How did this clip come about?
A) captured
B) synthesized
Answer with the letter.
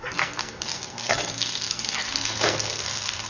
B